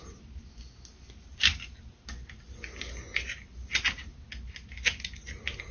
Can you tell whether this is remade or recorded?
recorded